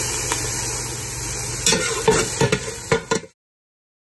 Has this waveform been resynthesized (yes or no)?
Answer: no